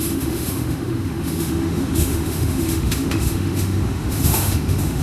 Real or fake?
fake